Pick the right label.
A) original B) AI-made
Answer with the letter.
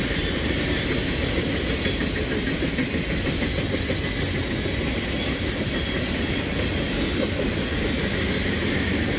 A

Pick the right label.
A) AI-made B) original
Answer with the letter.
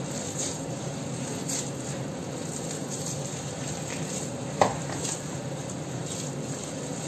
A